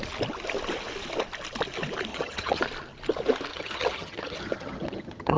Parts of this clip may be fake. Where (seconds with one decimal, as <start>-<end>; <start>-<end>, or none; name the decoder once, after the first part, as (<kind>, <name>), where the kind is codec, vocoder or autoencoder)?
2.1-2.6 (vocoder, HiFi-GAN); 3.5-5.4